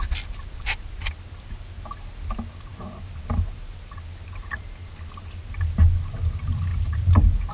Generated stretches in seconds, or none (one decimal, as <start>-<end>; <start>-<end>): 2.7-4.0; 4.4-4.9; 6.7-7.5